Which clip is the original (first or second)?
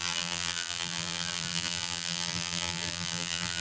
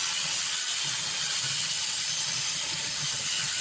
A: second